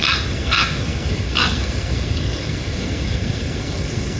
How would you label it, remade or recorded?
remade